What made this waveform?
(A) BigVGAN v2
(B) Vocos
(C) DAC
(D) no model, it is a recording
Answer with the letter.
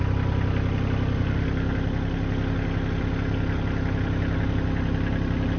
D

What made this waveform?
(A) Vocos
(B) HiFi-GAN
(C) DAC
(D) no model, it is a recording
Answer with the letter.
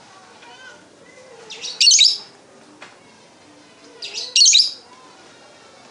D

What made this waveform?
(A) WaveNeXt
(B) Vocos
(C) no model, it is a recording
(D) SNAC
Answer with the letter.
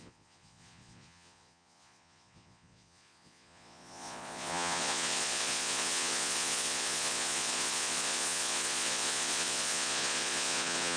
B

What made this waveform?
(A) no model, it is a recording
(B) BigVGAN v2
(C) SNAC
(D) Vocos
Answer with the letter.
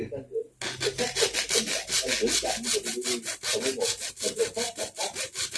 A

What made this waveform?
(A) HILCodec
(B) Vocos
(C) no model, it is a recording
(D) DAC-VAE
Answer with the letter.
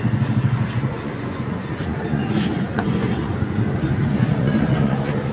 B